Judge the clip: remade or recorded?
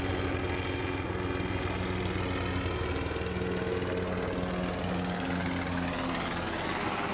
recorded